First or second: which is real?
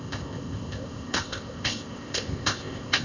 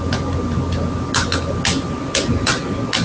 second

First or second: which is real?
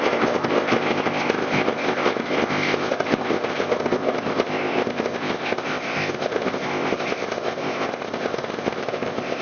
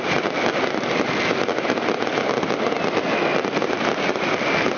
second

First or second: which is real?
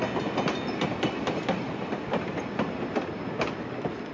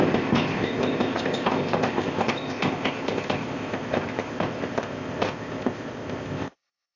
first